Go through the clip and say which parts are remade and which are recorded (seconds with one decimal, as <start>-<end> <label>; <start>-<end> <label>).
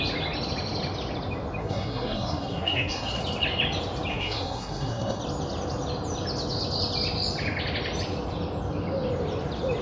0.0-1.6 recorded; 1.6-3.2 remade; 3.2-4.1 recorded; 4.1-5.2 remade; 5.2-9.8 recorded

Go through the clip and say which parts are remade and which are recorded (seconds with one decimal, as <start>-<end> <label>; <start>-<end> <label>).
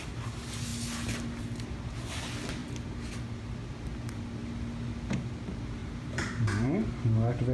0.0-2.6 recorded; 2.6-3.1 remade; 3.1-5.8 recorded; 5.8-6.9 remade; 6.9-7.5 recorded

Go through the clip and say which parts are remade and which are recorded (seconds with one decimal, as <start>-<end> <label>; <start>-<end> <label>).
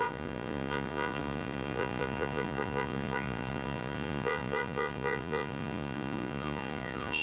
0.0-7.2 remade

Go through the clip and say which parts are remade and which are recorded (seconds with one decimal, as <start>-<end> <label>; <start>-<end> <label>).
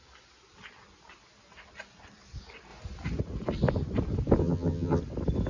0.0-4.4 recorded; 4.4-5.0 remade; 5.0-5.5 recorded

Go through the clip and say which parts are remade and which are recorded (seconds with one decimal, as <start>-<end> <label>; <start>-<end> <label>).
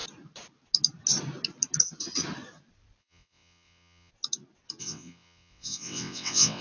0.0-3.0 recorded; 3.0-4.1 remade; 4.1-4.8 recorded; 4.8-6.6 remade